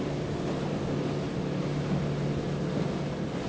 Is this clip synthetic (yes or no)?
no